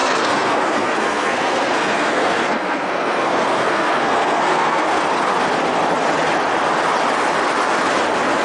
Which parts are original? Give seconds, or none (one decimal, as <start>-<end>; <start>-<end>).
5.0-8.4